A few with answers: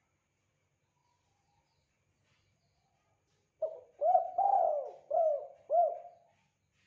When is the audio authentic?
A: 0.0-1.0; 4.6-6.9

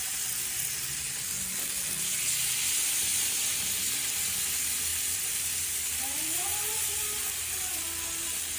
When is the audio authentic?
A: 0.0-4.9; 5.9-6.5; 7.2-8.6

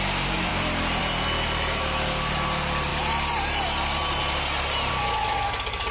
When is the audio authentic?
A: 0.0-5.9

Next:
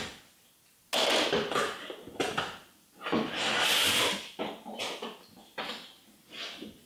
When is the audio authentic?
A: 0.0-6.9